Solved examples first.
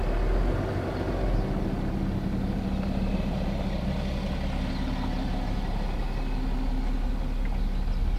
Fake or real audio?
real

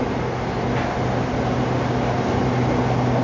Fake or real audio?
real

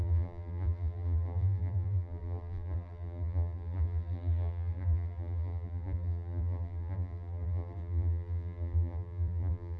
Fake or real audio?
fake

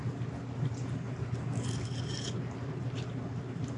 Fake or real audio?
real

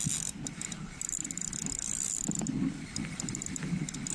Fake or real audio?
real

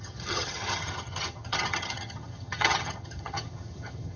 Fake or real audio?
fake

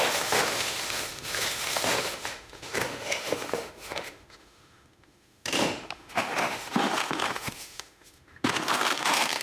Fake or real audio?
fake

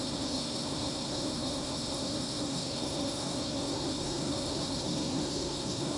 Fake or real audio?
fake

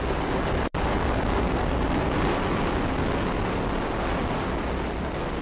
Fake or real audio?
real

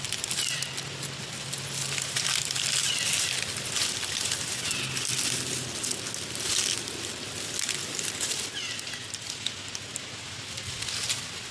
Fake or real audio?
real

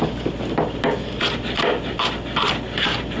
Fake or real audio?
real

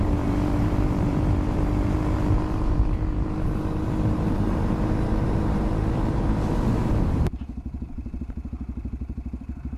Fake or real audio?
fake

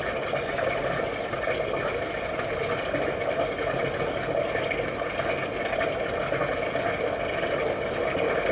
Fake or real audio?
real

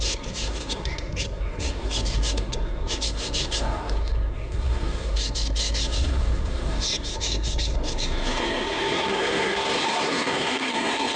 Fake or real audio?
fake